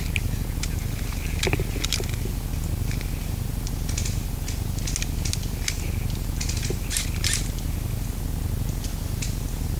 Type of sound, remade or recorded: recorded